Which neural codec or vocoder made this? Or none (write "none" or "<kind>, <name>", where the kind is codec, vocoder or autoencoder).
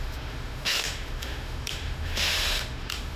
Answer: autoencoder, DAC-VAE